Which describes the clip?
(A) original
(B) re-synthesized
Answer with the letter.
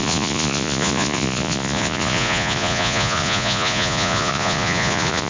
B